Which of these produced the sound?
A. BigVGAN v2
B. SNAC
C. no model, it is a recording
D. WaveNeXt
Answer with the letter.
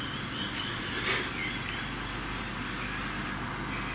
C